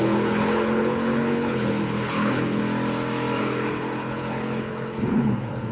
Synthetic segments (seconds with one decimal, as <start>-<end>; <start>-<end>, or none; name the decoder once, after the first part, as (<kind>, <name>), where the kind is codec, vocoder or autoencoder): 0.0-2.6 (codec, HILCodec); 3.4-5.7